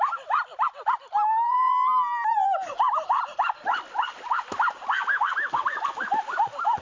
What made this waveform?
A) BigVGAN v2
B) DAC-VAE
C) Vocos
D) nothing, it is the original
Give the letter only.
D